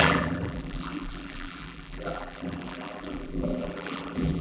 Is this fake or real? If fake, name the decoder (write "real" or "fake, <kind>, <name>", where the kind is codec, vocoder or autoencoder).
fake, vocoder, BigVGAN v2